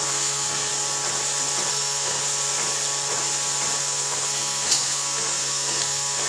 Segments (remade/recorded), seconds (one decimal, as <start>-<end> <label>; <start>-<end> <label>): 0.0-0.7 remade; 0.7-1.7 recorded; 1.7-2.2 remade; 2.2-3.8 recorded; 3.8-6.3 remade